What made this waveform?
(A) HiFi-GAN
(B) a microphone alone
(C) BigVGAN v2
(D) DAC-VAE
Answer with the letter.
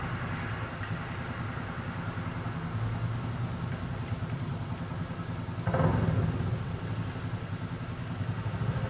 B